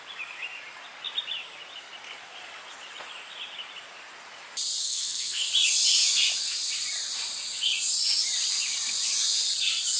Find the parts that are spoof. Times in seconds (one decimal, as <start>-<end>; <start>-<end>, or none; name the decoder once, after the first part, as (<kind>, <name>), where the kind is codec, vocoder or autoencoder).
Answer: 4.8-5.5 (codec, SNAC)